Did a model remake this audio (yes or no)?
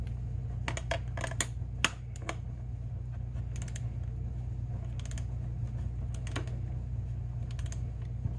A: no